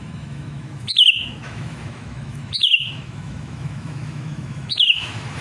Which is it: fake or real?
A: fake